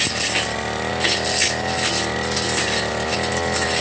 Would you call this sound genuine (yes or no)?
yes